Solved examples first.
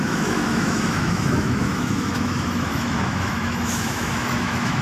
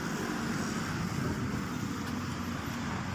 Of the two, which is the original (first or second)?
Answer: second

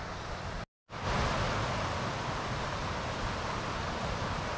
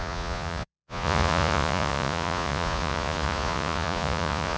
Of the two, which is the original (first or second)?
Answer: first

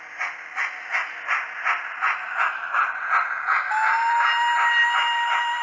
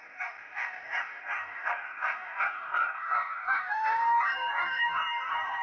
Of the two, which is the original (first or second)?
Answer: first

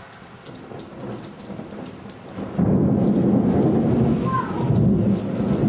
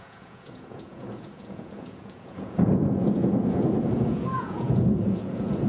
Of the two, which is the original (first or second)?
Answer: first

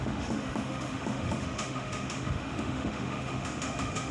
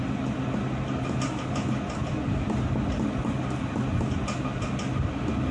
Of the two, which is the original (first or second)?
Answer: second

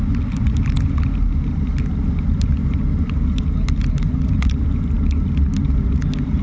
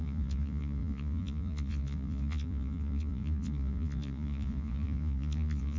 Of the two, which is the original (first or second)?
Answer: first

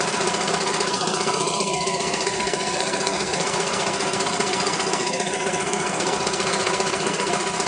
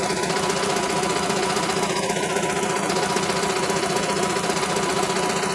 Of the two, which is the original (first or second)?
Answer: second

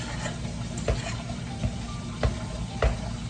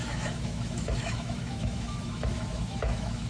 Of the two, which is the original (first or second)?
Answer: first